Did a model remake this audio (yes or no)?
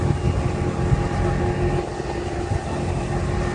no